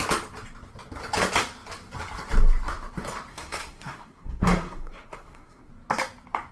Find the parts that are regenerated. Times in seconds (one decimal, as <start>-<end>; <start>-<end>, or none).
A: 3.3-5.7